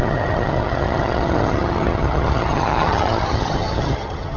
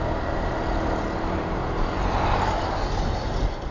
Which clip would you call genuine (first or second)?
second